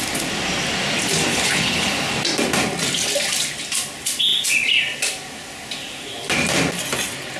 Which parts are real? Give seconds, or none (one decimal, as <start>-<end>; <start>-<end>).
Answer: 0.0-1.3; 2.1-7.4